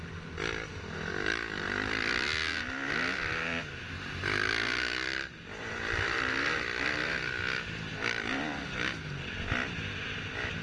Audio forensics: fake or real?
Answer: real